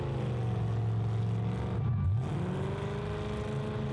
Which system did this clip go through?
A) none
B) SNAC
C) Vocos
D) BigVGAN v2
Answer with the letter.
A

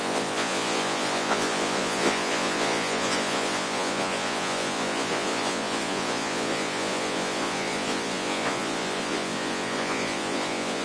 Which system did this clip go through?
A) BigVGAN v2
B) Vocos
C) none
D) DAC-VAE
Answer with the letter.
B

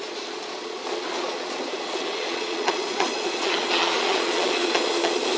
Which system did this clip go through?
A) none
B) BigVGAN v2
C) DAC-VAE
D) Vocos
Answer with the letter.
D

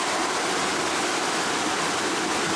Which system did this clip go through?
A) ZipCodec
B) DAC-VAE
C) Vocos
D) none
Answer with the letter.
D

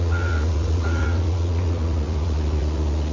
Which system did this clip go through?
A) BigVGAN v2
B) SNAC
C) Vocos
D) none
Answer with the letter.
C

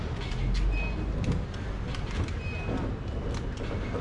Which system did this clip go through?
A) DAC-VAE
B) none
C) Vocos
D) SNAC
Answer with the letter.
B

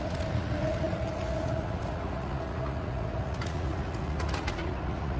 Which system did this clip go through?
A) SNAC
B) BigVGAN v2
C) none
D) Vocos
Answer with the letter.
D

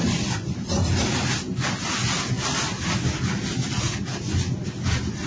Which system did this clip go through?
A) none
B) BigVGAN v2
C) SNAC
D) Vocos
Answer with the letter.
A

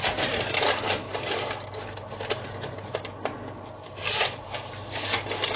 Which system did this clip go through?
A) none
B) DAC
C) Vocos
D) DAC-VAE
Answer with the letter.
A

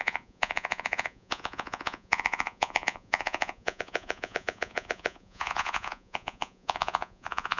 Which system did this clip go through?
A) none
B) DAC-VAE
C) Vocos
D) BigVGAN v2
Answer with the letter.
C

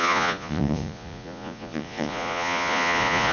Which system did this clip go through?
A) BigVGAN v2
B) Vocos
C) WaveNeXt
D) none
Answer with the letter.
B